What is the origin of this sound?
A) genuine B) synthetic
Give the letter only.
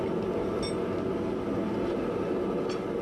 A